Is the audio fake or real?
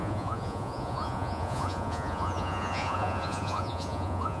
fake